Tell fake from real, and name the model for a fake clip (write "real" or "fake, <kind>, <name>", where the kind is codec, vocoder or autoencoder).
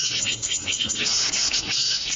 fake, codec, SNAC